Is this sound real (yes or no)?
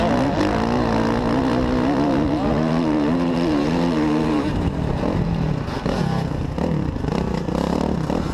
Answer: yes